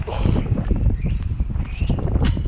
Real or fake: real